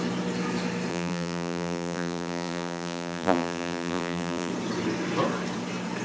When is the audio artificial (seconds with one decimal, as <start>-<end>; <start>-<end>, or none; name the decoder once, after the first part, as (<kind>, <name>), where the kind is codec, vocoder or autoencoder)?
0.9-4.5 (vocoder, BigVGAN v2)